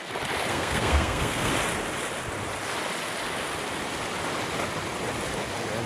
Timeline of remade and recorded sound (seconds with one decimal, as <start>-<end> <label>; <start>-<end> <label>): 0.0-0.5 recorded; 0.5-1.5 remade; 1.5-5.9 recorded